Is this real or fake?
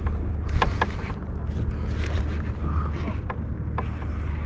real